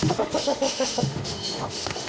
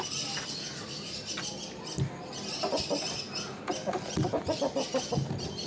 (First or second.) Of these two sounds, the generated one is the first